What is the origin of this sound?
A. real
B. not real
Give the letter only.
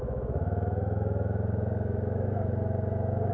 B